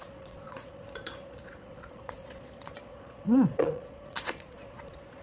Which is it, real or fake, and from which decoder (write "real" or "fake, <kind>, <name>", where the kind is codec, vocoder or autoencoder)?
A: fake, vocoder, Vocos